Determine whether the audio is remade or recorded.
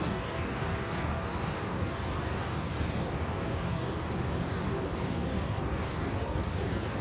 remade